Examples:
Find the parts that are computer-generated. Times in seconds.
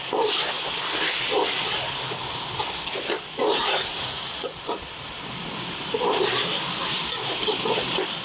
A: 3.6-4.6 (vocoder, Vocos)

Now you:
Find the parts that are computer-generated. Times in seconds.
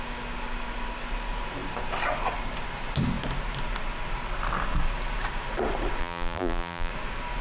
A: 6.0-6.9 (vocoder, BigVGAN v2)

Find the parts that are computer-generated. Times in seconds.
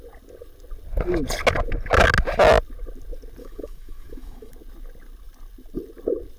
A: 3.4-4.5 (autoencoder, DAC-VAE)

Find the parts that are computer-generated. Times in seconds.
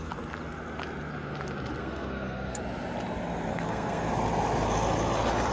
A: 1.8-2.6 (codec, SNAC); 3.5-4.1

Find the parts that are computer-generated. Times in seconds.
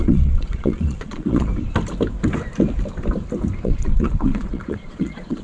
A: 0.0-1.5 (vocoder, Vocos); 3.6-5.4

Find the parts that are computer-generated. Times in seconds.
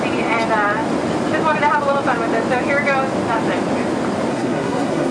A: 4.3-5.1 (codec, SNAC)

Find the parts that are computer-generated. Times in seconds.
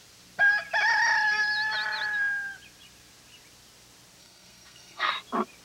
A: 4.2-5.1 (codec, SNAC)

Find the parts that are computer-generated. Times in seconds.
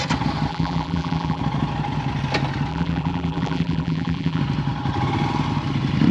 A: 0.5-1.4 (vocoder, BigVGAN v2); 2.7-4.4